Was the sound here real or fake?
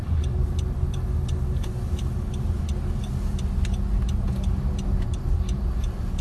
real